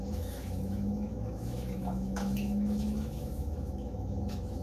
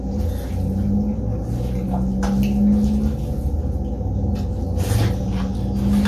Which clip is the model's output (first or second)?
first